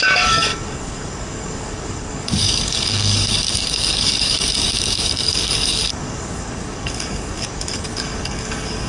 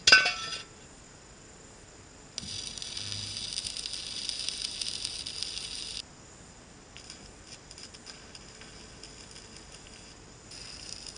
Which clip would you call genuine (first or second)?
second